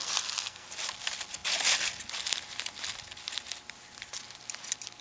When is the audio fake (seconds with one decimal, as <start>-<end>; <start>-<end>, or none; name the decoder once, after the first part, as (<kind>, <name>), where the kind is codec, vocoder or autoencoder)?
0.0-0.7 (codec, SNAC)